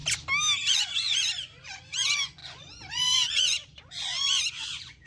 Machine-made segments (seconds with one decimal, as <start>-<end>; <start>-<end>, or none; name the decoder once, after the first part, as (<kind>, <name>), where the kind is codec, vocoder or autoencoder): 0.7-5.1 (vocoder, Vocos)